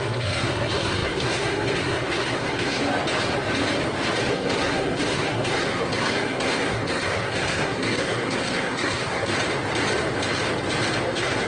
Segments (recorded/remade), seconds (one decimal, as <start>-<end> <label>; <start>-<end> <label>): 0.0-2.8 remade; 2.8-4.3 recorded; 4.3-9.3 remade; 9.3-11.1 recorded; 11.1-11.5 remade